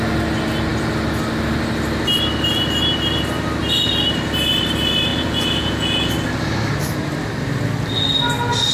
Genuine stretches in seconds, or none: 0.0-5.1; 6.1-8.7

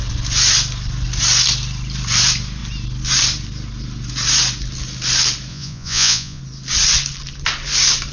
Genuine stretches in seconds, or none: 0.0-5.5; 6.4-8.1